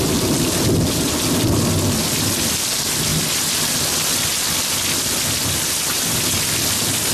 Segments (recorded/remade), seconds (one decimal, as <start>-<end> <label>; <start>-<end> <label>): 0.0-7.1 recorded